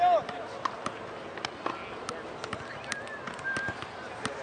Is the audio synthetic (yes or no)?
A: no